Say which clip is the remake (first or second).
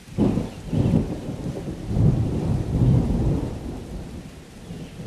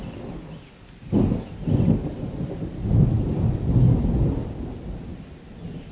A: first